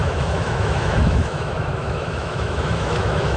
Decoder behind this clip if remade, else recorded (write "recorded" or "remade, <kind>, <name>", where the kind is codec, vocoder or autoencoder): remade, autoencoder, DAC-VAE